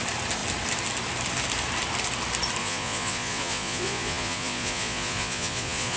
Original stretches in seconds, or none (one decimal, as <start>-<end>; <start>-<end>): 0.0-2.6